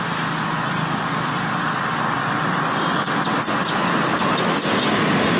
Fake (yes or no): no